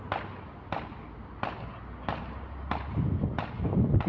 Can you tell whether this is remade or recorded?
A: recorded